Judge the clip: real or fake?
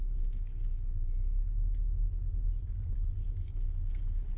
real